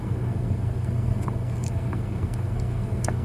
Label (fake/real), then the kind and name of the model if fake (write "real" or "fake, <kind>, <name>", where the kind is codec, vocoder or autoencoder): fake, codec, SNAC